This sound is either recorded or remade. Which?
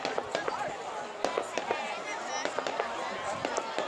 recorded